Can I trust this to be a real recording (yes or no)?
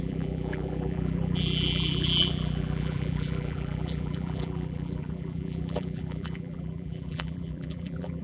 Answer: no